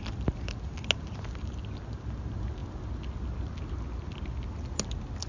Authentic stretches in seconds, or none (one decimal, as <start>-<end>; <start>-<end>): 0.0-5.3